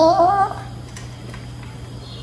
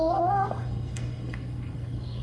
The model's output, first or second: second